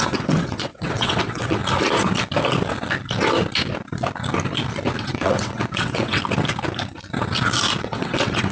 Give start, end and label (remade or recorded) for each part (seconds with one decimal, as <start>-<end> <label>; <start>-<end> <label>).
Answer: 0.0-1.6 remade; 1.6-5.0 recorded; 5.0-6.2 remade; 6.2-7.8 recorded; 7.8-8.5 remade